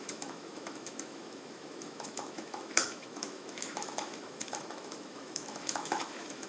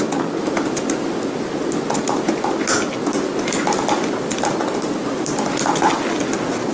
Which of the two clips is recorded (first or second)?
second